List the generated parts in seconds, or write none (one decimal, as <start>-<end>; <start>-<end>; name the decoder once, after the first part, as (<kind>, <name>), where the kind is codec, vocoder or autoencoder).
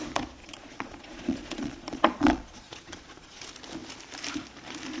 0.4-3.4 (vocoder, Vocos)